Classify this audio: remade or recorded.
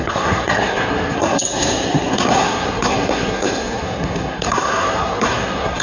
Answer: remade